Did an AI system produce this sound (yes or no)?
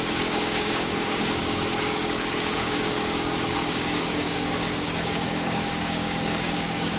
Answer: yes